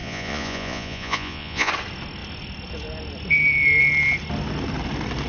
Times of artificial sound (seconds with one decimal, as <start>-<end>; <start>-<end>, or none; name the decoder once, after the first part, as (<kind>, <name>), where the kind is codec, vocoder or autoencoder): 0.0-1.7 (vocoder, Vocos)